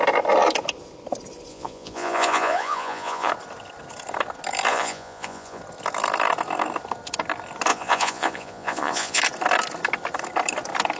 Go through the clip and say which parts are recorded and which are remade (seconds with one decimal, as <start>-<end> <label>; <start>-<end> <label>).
0.0-1.5 recorded; 1.5-3.3 remade; 3.3-4.7 recorded; 4.7-5.6 remade; 5.6-7.7 recorded; 7.7-9.2 remade; 9.2-11.0 recorded